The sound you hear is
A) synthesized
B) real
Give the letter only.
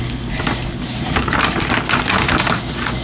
B